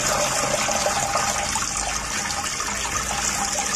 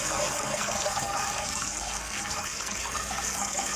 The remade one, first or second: second